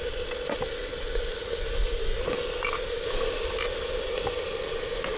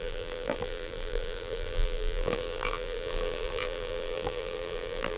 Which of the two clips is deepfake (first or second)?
second